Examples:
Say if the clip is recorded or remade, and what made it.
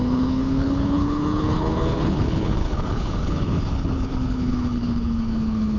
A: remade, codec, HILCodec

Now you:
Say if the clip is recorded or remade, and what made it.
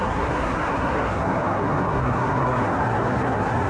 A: remade, codec, SNAC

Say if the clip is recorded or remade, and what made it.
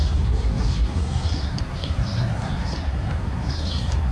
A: remade, codec, SNAC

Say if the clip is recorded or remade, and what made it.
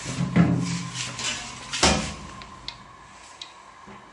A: recorded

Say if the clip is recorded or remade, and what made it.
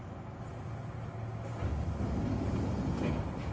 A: recorded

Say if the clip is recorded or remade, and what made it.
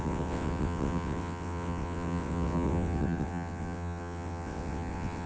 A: remade, vocoder, WaveNeXt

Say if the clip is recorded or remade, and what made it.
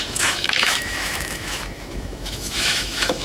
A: remade, autoencoder, DAC-VAE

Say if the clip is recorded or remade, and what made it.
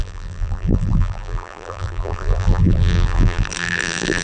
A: remade, vocoder, BigVGAN v2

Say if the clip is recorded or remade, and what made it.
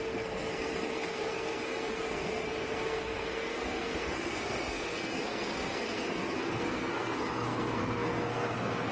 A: remade, codec, SNAC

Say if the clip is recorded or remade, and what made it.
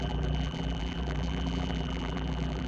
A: remade, vocoder, BigVGAN v2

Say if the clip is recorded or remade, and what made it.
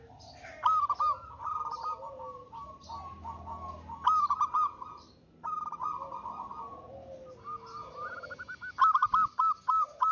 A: recorded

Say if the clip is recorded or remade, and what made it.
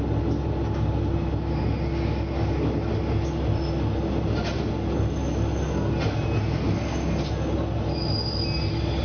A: recorded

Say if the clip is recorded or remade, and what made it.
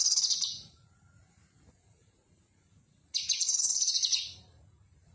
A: remade, vocoder, Vocos